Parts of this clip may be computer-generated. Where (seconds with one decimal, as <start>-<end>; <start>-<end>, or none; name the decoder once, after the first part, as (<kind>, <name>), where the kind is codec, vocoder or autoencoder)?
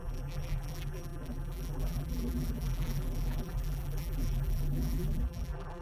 0.0-5.8 (vocoder, BigVGAN v2)